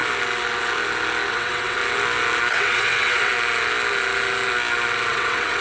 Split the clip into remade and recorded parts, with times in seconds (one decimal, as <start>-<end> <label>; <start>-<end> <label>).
0.0-1.3 recorded; 1.3-1.8 remade; 1.8-2.5 recorded; 2.5-3.3 remade; 3.3-5.1 recorded; 5.1-5.6 remade